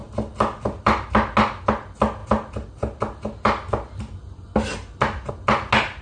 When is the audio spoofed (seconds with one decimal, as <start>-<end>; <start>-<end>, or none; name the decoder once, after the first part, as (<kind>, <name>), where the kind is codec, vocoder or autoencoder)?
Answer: 0.0-1.1 (vocoder, BigVGAN v2)